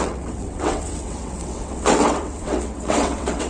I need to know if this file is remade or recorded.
remade